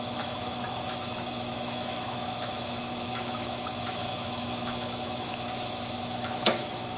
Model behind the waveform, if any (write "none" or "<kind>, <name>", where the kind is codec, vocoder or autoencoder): autoencoder, DAC-VAE